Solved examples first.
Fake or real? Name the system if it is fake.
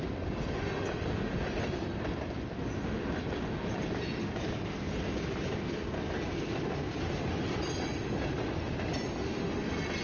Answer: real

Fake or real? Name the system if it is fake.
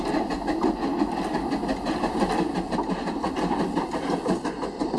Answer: real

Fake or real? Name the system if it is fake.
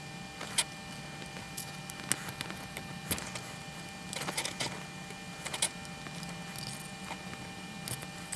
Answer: real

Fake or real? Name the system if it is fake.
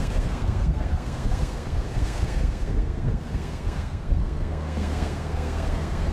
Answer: fake, codec, SNAC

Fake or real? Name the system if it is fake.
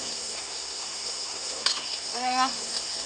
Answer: fake, codec, SNAC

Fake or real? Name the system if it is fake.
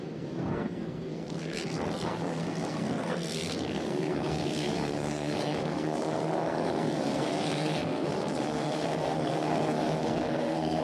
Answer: fake, codec, SNAC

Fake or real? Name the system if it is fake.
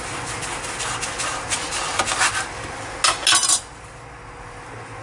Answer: real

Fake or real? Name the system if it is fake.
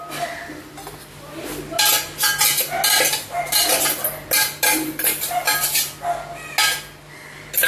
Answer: real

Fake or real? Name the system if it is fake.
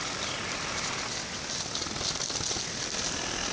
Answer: real